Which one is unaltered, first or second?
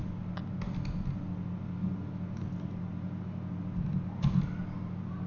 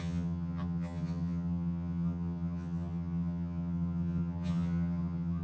first